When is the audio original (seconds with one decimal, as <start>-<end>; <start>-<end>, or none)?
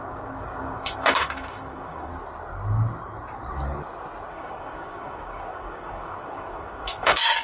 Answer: 2.1-4.3